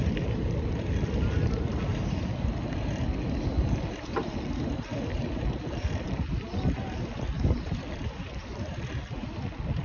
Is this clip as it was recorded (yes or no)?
yes